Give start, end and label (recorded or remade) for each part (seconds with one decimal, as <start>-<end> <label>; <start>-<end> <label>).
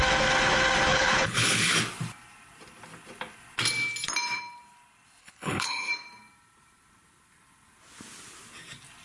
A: 0.0-0.9 recorded; 0.9-1.7 remade; 1.7-5.2 recorded; 5.2-5.9 remade; 5.9-9.0 recorded